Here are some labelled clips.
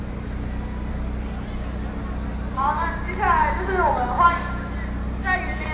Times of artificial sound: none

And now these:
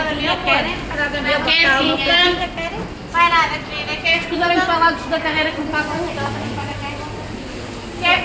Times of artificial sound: 0.4-2.5 (vocoder, BigVGAN v2); 3.9-4.5

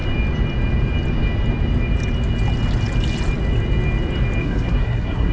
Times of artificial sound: 4.4-5.3 (codec, SNAC)